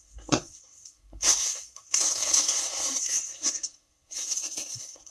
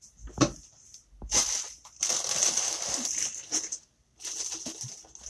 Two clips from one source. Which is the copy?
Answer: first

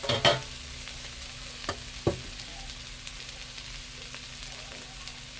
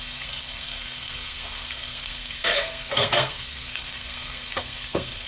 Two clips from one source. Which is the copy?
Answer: second